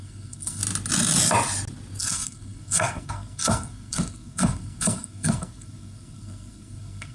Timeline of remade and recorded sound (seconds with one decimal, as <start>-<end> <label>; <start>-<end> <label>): 0.0-0.6 remade; 0.6-2.0 recorded; 2.0-7.1 remade